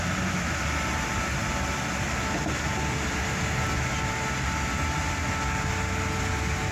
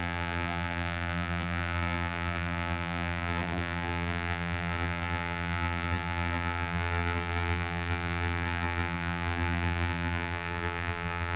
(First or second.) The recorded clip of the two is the first